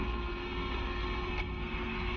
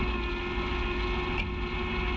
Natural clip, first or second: second